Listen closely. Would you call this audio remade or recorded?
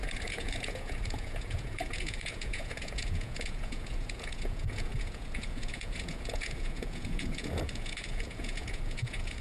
remade